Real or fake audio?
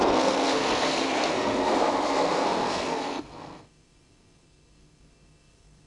fake